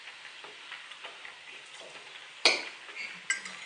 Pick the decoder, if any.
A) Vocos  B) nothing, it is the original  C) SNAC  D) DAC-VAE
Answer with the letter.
B